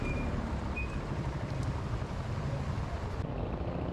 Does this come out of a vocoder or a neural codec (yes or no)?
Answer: yes